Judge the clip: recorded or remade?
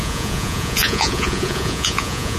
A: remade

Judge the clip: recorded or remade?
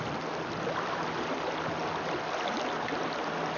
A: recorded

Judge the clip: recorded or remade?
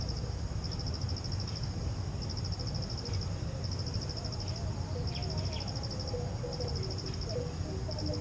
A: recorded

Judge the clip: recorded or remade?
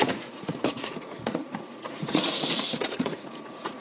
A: remade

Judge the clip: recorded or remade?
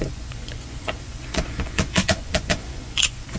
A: remade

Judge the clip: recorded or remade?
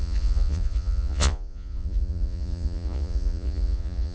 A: remade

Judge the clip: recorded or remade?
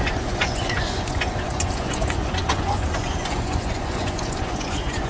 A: remade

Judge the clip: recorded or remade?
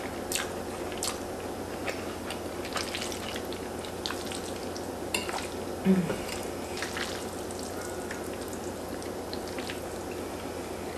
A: recorded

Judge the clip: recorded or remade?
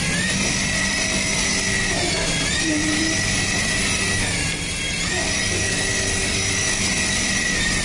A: recorded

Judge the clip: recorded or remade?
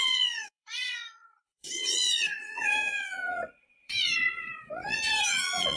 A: remade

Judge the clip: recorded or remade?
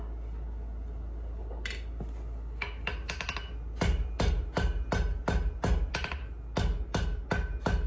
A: recorded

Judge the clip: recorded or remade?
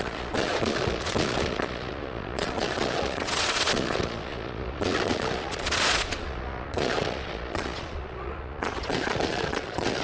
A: remade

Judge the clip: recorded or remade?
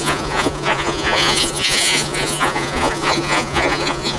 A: remade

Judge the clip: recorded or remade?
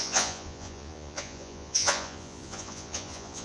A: remade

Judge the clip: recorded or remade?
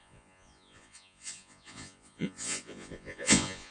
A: remade